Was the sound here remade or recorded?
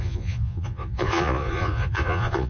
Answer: remade